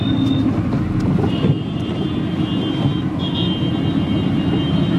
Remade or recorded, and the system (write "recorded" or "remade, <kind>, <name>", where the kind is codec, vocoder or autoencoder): recorded